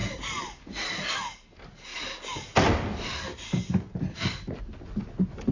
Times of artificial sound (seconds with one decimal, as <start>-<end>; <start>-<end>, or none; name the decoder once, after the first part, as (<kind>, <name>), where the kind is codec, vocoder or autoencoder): none